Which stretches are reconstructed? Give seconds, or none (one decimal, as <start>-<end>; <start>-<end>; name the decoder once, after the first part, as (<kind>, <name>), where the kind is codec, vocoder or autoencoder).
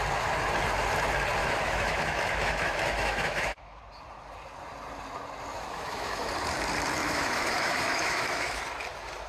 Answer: 1.4-3.8 (autoencoder, DAC-VAE); 5.5-6.3; 7.0-8.6